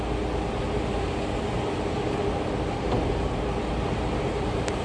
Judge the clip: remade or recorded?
recorded